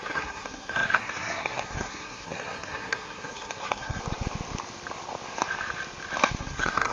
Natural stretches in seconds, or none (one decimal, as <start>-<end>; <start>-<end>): 4.0-6.4